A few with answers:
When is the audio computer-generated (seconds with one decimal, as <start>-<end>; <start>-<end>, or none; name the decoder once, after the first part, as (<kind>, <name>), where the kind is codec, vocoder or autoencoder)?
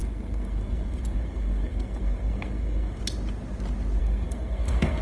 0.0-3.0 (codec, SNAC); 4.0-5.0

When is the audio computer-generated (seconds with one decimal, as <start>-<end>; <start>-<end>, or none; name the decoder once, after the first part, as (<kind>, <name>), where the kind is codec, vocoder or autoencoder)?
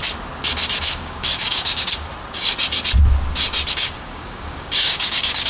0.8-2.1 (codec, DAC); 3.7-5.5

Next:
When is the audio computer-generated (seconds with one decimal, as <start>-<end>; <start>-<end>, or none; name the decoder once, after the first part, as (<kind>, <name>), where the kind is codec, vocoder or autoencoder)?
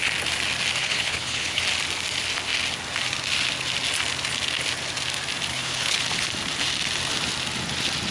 0.8-1.6 (codec, HILCodec); 5.5-6.0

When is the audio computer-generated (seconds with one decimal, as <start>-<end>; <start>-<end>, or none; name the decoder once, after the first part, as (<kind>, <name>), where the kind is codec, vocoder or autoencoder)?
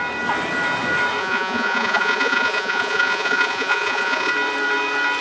1.2-4.3 (vocoder, Vocos)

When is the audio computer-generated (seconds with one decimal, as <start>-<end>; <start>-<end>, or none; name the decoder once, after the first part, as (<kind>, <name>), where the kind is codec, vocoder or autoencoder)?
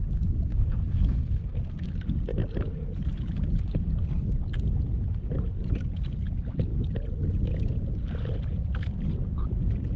0.5-1.9 (codec, SNAC)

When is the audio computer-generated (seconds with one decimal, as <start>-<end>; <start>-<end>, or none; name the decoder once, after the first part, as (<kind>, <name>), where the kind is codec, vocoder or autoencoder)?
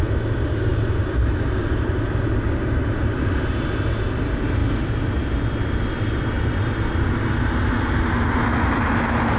none